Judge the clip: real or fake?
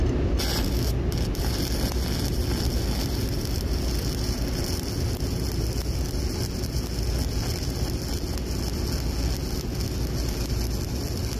real